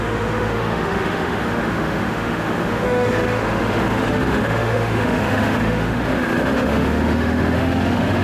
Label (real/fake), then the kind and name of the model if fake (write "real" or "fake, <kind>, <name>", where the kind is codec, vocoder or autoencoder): fake, autoencoder, DAC-VAE